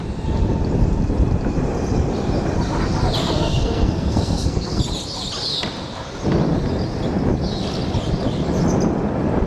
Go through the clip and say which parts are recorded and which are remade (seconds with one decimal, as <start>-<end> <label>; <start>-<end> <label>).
0.0-3.2 recorded; 3.2-4.8 remade; 4.8-9.5 recorded